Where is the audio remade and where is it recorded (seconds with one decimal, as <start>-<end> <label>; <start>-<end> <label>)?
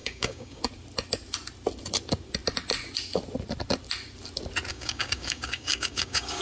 0.0-0.6 remade; 0.6-4.7 recorded; 4.7-6.4 remade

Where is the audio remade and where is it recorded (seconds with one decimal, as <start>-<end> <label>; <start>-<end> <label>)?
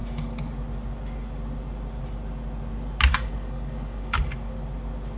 0.0-3.1 recorded; 3.1-4.2 remade; 4.2-5.2 recorded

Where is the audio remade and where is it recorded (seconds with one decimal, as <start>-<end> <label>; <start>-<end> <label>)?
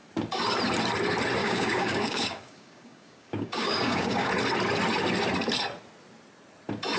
0.0-1.4 recorded; 1.4-4.3 remade; 4.3-7.0 recorded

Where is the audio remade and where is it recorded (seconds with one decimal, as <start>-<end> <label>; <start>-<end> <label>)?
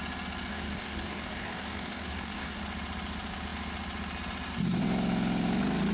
0.0-0.5 recorded; 0.5-2.6 remade; 2.6-5.9 recorded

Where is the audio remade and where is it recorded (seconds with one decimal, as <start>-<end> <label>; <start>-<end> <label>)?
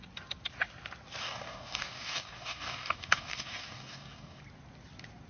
0.0-1.2 recorded; 1.2-4.4 remade; 4.4-5.3 recorded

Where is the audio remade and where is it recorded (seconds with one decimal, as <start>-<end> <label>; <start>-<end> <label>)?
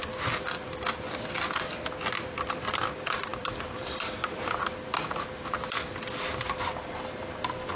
0.0-7.8 recorded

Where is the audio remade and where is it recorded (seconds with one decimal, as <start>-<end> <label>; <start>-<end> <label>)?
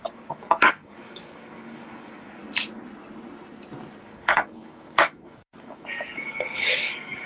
0.0-2.4 remade; 2.4-4.0 recorded; 4.0-7.3 remade